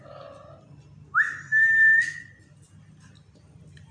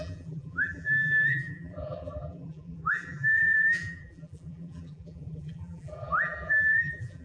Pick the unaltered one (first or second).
first